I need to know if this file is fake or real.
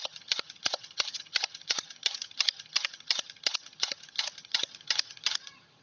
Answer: fake